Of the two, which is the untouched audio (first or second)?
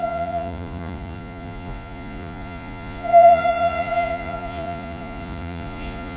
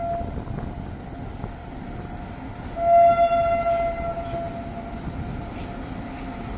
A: second